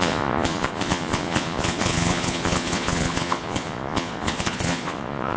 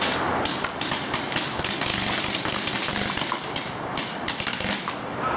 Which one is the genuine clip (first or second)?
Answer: second